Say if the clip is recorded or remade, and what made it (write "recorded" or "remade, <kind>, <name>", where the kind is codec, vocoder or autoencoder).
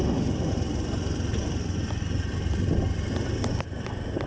recorded